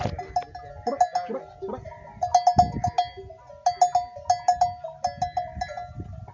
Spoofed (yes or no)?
no